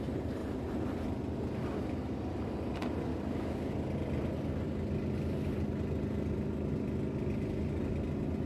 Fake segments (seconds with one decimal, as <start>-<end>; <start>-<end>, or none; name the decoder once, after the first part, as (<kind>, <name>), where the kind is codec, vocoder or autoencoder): 3.1-3.7 (codec, DAC)